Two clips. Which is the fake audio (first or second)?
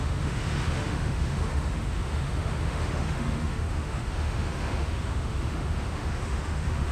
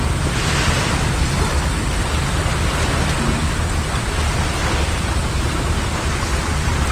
first